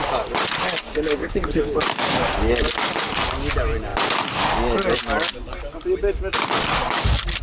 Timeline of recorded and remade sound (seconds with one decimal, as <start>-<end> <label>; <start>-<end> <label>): 0.0-1.2 recorded; 1.2-1.8 remade; 1.8-7.4 recorded